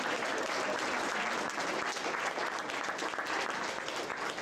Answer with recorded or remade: recorded